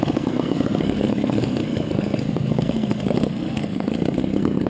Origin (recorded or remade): remade